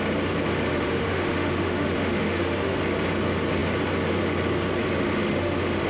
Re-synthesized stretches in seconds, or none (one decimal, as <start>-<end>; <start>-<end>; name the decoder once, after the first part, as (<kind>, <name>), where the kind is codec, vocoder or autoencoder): 0.7-2.8 (autoencoder, DAC-VAE); 4.8-5.9